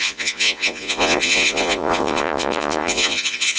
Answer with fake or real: fake